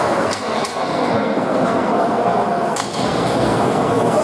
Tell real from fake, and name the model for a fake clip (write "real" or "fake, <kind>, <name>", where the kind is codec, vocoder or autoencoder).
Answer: fake, codec, SNAC